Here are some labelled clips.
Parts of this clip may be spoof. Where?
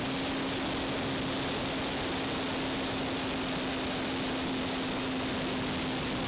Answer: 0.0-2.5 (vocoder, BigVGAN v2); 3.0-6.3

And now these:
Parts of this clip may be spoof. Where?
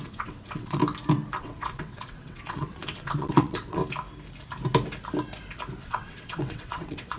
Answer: 0.0-0.8 (vocoder, WaveNeXt); 1.4-3.8; 5.8-7.2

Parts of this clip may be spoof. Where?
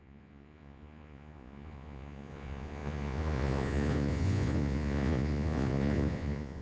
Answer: 0.0-6.6 (vocoder, Vocos)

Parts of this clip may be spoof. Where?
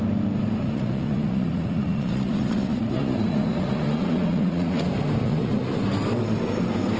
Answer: 0.6-4.8 (vocoder, Vocos); 5.2-5.8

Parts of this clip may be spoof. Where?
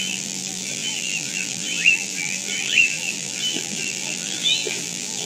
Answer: 0.0-5.3 (vocoder, BigVGAN v2)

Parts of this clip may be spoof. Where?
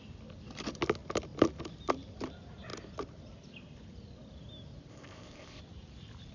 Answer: 4.9-5.6 (codec, ZipCodec)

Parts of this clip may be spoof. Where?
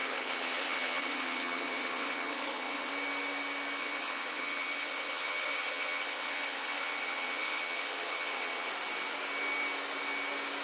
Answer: 0.0-2.9 (vocoder, HiFi-GAN); 3.8-8.7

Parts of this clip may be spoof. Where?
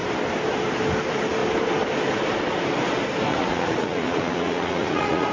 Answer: 3.3-5.3 (vocoder, Vocos)